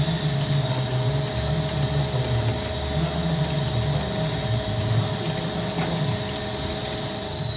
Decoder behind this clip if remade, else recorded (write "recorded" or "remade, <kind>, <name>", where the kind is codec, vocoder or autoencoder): recorded